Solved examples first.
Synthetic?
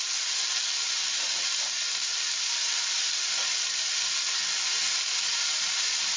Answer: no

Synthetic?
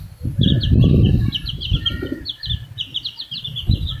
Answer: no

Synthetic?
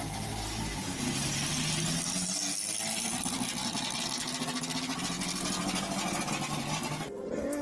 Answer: no